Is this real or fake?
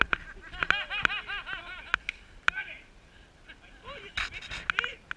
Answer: real